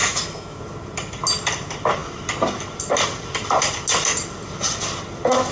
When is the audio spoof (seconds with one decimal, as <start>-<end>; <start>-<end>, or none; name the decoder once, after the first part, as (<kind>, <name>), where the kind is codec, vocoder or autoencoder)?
0.0-0.6 (autoencoder, DAC-VAE)